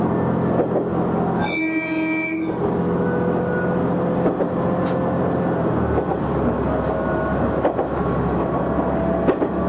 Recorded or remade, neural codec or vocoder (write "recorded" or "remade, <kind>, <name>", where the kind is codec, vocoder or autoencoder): recorded